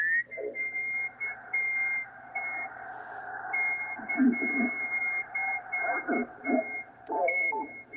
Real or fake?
real